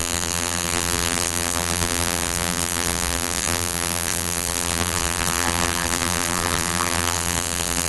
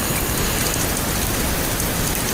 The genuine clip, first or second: second